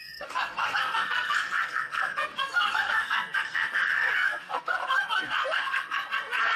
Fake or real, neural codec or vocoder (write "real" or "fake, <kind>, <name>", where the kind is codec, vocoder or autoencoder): fake, codec, SNAC